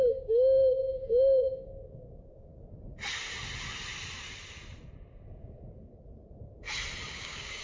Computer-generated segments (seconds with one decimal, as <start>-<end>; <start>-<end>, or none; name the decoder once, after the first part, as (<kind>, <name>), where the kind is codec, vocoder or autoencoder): 0.0-2.5 (codec, DAC); 7.1-7.6